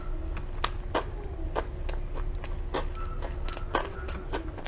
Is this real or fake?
real